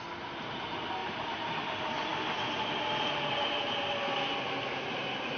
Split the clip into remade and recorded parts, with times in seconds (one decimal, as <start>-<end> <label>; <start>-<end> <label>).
0.0-1.0 recorded; 1.0-1.5 remade; 1.5-5.4 recorded